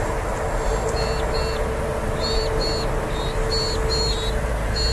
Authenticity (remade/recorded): recorded